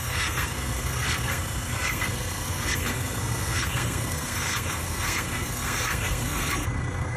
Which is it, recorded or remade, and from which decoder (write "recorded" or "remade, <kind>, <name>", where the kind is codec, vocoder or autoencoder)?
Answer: remade, codec, SNAC